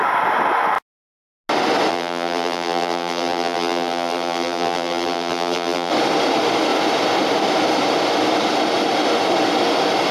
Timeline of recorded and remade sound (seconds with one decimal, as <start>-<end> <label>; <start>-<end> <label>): 0.0-1.9 recorded; 1.9-5.9 remade; 5.9-10.1 recorded